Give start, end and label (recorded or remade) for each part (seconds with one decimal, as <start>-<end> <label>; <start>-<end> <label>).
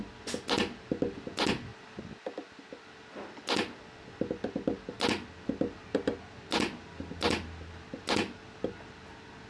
0.0-9.5 recorded